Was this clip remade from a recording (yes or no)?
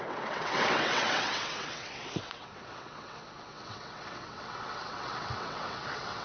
yes